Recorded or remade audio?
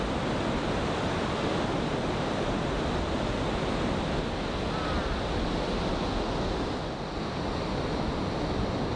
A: recorded